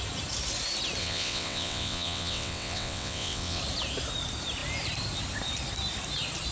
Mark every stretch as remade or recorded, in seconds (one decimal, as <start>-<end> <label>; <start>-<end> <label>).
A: 0.0-1.0 recorded; 1.0-3.6 remade; 3.6-6.5 recorded